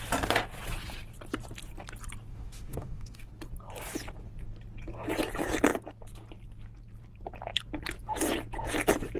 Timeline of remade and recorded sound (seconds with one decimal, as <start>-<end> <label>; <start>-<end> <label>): 0.0-2.3 recorded; 2.3-3.3 remade; 3.3-9.2 recorded